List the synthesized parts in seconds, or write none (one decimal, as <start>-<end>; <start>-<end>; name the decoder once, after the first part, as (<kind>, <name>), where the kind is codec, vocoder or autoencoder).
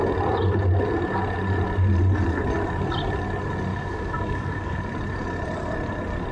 3.7-4.8 (codec, DAC)